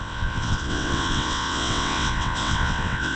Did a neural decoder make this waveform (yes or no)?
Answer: yes